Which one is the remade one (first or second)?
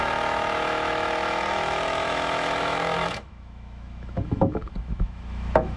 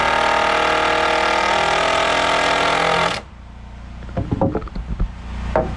first